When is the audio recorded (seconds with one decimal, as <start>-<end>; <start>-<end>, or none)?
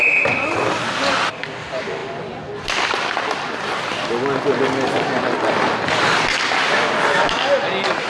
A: 0.0-8.1